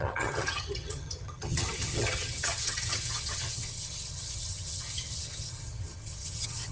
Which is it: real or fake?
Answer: fake